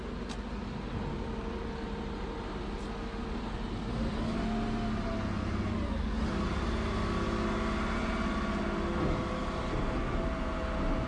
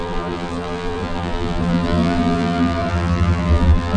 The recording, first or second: first